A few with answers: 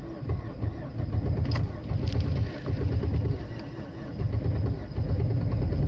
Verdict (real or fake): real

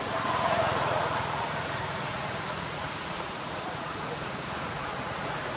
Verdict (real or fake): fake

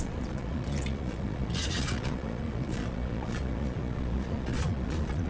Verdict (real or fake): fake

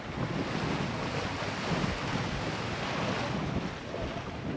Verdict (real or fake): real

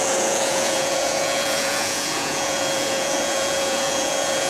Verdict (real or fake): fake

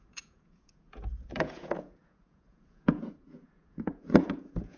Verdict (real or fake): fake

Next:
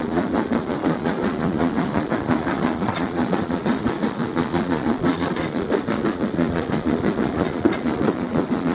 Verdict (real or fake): fake